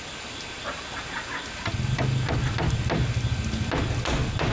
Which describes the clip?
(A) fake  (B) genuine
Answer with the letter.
B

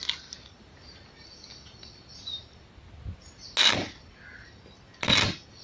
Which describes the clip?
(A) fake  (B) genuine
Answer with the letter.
B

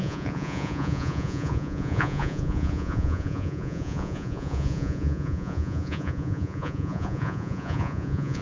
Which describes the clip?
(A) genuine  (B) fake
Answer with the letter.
B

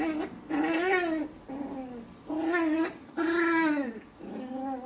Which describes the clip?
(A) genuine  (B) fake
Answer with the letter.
A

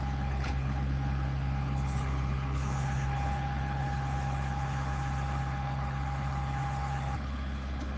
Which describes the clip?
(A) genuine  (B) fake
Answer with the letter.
B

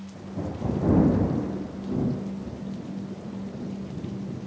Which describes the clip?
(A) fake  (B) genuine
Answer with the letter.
B